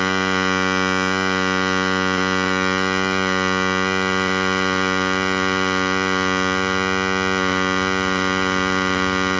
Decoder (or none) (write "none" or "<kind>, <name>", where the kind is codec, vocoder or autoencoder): none